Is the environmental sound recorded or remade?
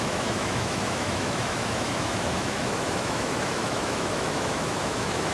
remade